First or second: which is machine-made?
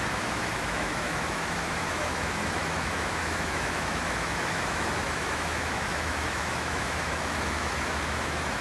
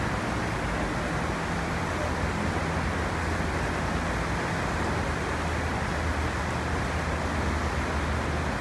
first